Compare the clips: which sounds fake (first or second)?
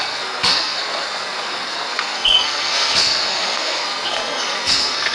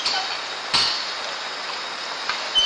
first